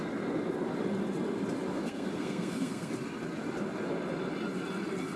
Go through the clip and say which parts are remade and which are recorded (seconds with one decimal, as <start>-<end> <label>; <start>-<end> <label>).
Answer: 0.0-1.7 recorded; 1.7-2.9 remade; 2.9-5.2 recorded